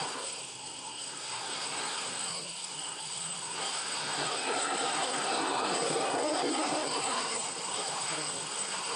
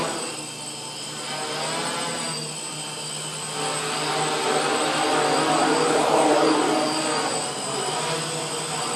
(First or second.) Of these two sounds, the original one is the second